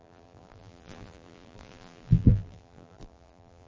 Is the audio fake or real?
fake